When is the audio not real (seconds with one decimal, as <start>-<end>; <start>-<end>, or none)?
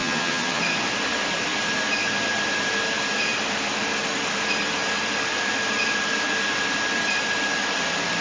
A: 0.0-0.6